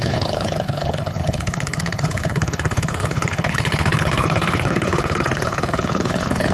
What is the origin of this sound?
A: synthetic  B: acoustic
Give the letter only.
A